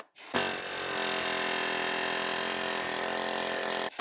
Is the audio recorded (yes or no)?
yes